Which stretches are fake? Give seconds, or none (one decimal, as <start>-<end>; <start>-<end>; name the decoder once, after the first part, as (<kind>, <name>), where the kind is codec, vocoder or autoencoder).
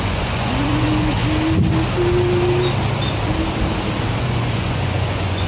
0.0-1.2 (vocoder, Vocos); 4.2-5.5